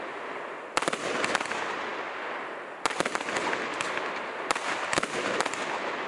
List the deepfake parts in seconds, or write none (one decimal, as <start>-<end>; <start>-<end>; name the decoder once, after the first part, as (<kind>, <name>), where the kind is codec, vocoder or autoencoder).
none